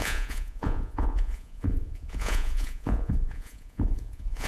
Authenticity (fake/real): fake